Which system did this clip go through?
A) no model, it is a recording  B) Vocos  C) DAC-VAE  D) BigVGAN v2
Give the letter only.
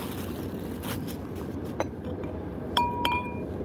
A